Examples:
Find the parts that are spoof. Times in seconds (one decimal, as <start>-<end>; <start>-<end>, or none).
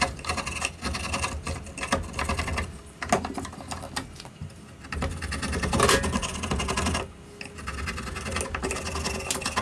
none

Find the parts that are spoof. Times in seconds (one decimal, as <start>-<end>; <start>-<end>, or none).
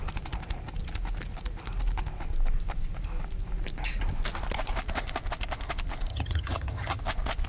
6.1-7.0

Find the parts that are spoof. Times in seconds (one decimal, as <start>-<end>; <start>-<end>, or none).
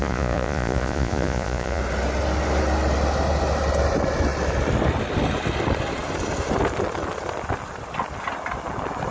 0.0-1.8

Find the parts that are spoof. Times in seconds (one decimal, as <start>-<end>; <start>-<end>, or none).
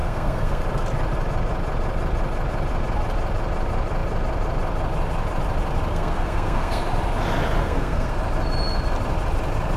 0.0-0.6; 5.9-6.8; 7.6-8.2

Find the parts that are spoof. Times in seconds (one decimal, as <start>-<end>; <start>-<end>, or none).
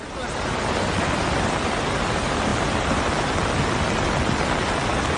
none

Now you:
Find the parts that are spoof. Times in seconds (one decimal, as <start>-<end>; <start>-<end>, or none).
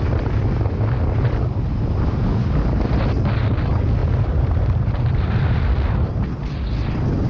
4.0-5.1